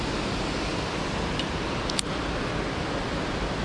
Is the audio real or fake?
real